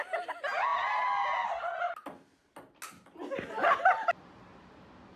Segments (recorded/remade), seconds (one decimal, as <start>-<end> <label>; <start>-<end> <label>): 0.0-5.2 recorded

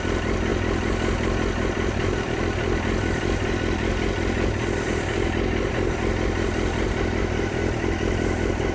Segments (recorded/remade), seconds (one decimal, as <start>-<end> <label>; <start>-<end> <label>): 0.0-8.7 recorded

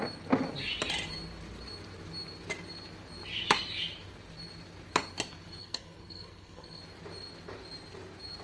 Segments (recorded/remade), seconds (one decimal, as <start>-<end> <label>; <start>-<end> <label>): 0.0-5.6 recorded; 5.6-6.8 remade; 6.8-8.4 recorded

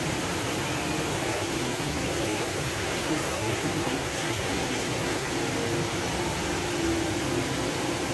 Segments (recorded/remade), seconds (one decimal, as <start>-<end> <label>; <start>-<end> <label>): 0.0-1.1 recorded; 1.1-5.3 remade; 5.3-8.1 recorded

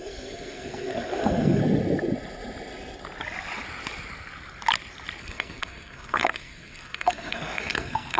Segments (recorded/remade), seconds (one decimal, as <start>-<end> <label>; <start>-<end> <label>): 0.0-1.6 remade; 1.6-5.2 recorded; 5.2-8.2 remade

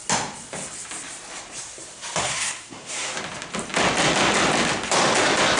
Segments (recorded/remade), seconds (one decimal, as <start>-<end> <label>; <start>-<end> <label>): 0.0-2.2 recorded; 2.2-3.1 remade; 3.1-5.6 recorded

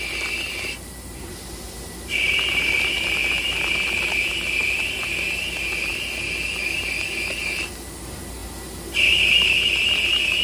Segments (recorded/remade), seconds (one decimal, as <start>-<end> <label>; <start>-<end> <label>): 0.0-10.4 recorded

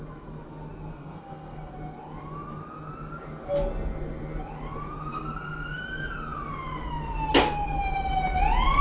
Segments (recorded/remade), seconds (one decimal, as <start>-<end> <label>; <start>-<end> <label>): 0.0-0.9 recorded; 0.9-1.7 remade; 1.7-5.1 recorded; 5.1-5.8 remade; 5.8-8.8 recorded